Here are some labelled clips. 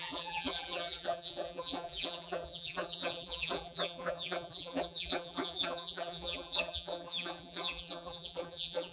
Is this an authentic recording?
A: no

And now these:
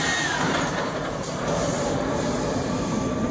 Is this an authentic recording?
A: no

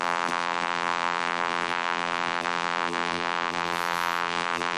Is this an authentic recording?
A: no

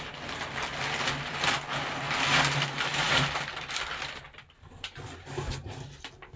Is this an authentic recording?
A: yes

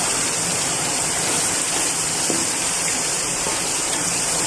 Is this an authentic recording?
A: no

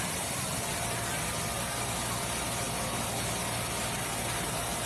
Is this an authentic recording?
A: yes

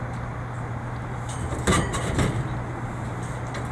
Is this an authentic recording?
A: yes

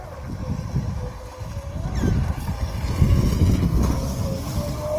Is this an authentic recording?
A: yes